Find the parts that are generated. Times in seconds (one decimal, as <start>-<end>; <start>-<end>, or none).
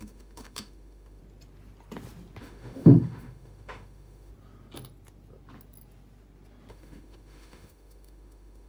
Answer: 0.0-1.2; 2.4-4.3; 6.7-8.7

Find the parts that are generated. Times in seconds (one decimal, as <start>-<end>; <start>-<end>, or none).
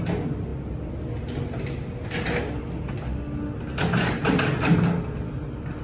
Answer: none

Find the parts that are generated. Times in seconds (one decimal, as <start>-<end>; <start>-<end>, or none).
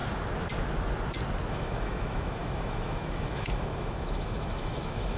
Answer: 1.5-5.2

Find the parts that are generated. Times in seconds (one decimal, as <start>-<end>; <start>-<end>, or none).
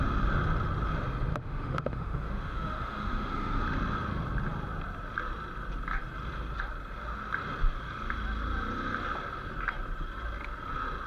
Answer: 1.3-3.6